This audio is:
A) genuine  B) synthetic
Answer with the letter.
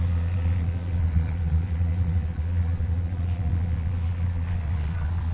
B